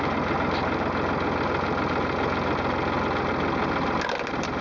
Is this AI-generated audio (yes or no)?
no